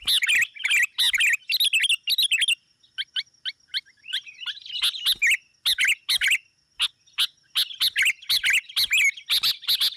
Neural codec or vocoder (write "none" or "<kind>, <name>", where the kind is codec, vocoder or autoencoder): none